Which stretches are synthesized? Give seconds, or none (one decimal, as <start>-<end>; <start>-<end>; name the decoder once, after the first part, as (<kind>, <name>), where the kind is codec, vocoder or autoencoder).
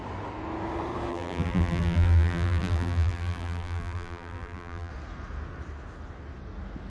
1.1-4.9 (vocoder, BigVGAN v2)